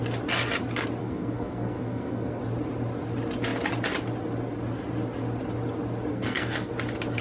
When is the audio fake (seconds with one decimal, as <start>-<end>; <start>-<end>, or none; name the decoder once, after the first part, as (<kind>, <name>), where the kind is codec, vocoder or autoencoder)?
1.0-2.4 (codec, SNAC); 6.1-6.7